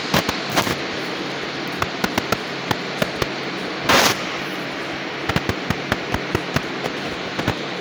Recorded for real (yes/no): yes